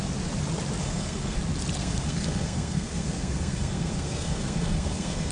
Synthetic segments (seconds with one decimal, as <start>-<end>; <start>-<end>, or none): 0.8-1.4; 1.8-5.3